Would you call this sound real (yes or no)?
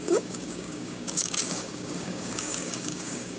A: no